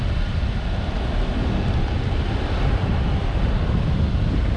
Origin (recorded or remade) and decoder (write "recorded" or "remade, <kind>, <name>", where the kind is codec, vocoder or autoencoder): remade, vocoder, BigVGAN v2